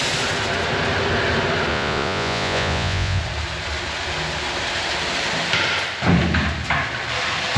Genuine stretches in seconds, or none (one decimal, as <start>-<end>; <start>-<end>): 0.0-1.7; 3.2-7.6